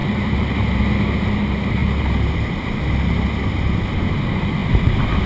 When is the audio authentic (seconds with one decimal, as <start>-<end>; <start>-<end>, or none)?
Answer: 0.8-1.8; 2.8-5.3